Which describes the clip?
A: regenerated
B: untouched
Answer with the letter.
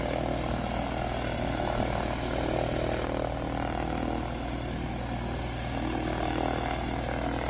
B